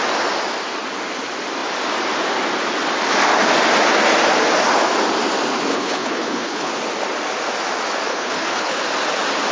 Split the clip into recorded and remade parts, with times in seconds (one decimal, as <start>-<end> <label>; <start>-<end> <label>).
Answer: 0.0-5.7 recorded; 5.7-6.7 remade; 6.7-8.1 recorded; 8.1-8.8 remade; 8.8-9.5 recorded